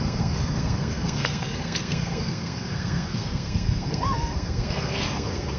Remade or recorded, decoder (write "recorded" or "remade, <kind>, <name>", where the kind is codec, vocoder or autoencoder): remade, codec, SNAC